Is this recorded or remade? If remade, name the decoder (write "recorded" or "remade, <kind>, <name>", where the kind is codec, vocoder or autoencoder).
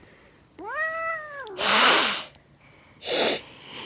recorded